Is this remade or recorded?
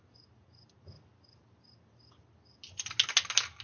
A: recorded